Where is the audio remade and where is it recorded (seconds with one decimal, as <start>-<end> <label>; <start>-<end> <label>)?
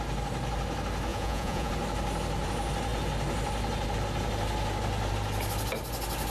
0.0-1.1 recorded; 1.1-1.7 remade; 1.7-6.3 recorded